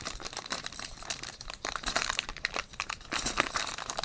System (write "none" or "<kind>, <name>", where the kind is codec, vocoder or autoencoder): vocoder, BigVGAN v2